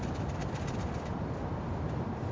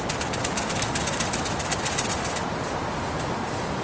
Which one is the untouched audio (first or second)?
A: second